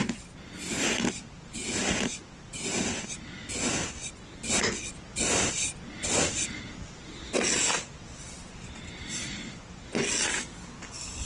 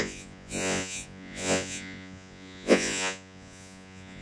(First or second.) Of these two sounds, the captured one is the first